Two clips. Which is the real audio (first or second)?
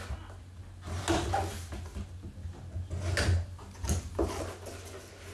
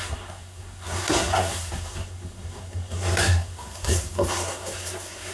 first